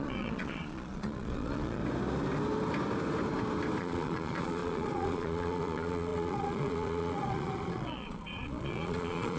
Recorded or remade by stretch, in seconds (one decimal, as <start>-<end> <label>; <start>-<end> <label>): 0.0-1.8 remade; 1.8-3.8 recorded; 3.8-9.4 remade